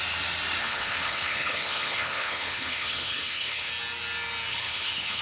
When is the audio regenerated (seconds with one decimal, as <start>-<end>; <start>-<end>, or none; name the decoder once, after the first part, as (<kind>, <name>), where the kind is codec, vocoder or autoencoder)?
0.6-3.7 (codec, HILCodec); 4.5-5.2